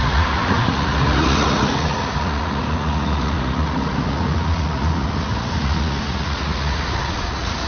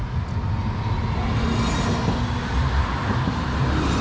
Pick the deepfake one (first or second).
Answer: first